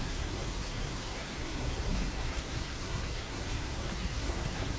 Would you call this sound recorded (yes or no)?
no